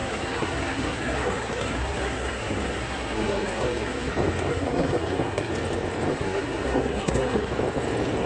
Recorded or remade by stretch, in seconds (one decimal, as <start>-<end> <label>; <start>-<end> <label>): 0.0-4.1 remade; 4.1-4.5 recorded; 4.5-5.5 remade; 5.5-6.1 recorded; 6.1-7.5 remade; 7.5-8.3 recorded